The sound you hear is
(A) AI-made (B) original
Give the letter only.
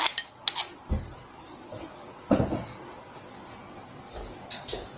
B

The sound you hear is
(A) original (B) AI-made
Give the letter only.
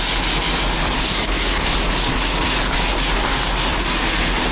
A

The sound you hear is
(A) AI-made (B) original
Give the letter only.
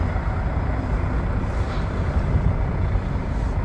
B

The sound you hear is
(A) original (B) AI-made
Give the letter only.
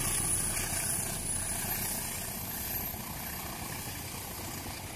A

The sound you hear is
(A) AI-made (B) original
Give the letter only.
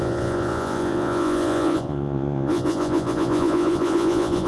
A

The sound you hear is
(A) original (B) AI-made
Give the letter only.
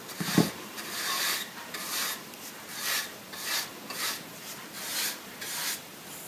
B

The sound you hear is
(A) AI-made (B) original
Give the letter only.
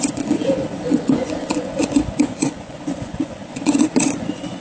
A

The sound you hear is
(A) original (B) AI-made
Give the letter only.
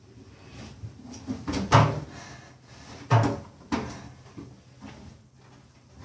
A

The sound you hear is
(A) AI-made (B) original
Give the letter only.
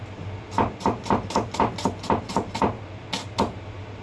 B